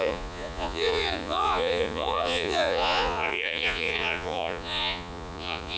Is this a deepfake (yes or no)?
yes